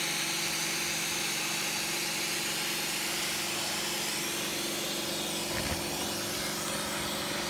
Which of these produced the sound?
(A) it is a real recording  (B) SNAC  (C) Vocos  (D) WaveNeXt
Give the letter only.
A